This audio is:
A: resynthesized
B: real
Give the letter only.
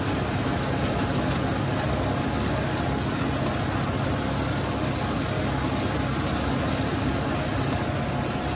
B